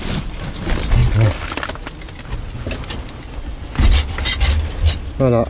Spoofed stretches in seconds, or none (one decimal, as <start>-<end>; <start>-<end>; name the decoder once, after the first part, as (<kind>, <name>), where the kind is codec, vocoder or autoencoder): none